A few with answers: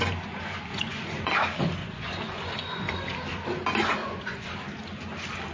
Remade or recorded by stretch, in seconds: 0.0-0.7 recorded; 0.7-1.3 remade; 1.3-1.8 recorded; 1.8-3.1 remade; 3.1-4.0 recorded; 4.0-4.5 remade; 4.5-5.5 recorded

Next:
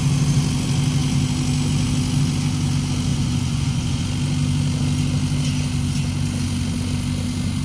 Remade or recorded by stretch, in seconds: 0.0-3.1 recorded; 3.1-4.0 remade; 4.0-7.6 recorded

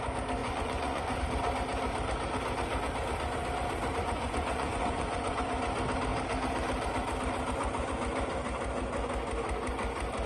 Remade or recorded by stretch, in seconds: 0.0-0.4 recorded; 0.4-1.2 remade; 1.2-4.0 recorded; 4.0-5.4 remade; 5.4-10.3 recorded

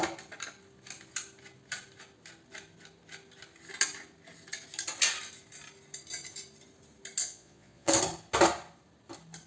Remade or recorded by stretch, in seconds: 0.0-7.2 recorded; 7.2-7.9 remade; 7.9-9.5 recorded

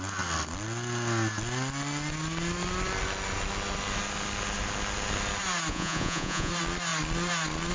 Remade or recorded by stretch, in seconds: 0.0-5.7 recorded; 5.7-6.5 remade; 6.5-7.7 recorded

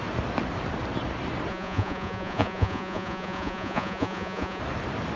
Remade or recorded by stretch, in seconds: 0.0-1.5 recorded; 1.5-4.6 remade; 4.6-5.2 recorded

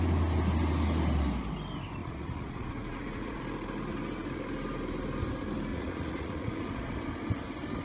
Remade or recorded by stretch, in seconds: 0.0-2.0 recorded; 2.0-3.4 remade; 3.4-5.7 recorded; 5.7-7.0 remade; 7.0-7.8 recorded

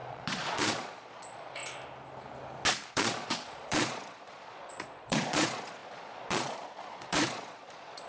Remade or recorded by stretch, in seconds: 0.0-1.6 remade; 1.6-2.9 recorded; 2.9-8.1 remade